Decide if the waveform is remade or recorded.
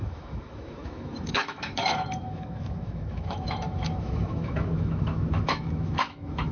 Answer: remade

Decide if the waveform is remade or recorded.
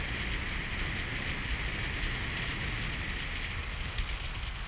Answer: recorded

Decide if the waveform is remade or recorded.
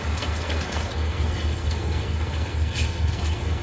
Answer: remade